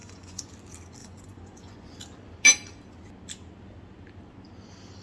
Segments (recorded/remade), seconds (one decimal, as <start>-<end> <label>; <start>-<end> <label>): 0.0-0.5 remade; 0.5-1.0 recorded; 1.0-1.9 remade; 1.9-5.0 recorded